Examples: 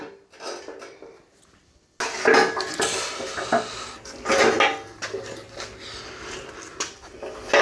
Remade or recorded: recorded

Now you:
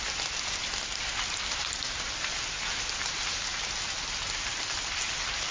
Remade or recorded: recorded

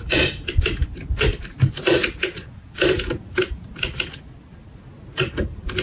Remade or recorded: remade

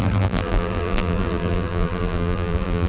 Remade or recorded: remade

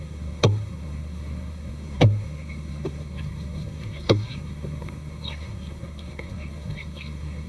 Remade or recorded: remade